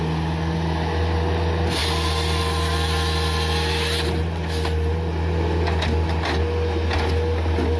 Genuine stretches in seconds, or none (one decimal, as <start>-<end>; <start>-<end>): 0.0-7.8